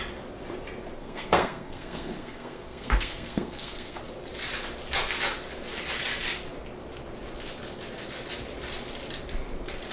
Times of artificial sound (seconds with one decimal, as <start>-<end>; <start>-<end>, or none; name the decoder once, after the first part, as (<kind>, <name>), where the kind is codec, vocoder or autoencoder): 1.0-4.0 (codec, SNAC)

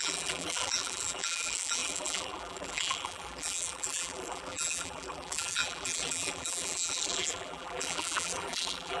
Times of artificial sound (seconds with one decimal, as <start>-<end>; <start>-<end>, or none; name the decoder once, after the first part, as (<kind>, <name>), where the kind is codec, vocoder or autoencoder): 0.0-9.0 (vocoder, BigVGAN v2)